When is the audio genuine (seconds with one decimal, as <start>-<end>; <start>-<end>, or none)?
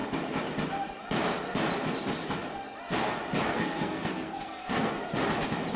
0.0-3.5; 4.9-5.8